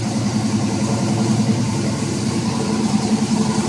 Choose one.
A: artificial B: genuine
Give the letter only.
A